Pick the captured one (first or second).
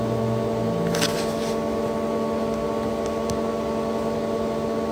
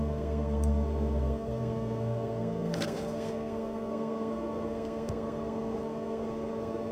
first